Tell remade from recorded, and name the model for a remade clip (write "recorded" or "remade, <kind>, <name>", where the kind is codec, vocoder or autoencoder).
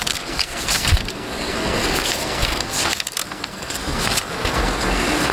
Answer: remade, codec, SNAC